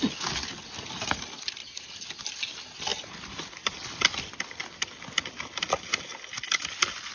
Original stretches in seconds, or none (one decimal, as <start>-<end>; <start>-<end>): 0.0-7.1